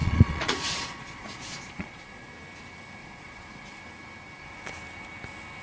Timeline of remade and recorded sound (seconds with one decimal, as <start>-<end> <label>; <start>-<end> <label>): 0.0-2.3 remade; 2.3-3.0 recorded; 3.0-3.8 remade; 3.8-5.6 recorded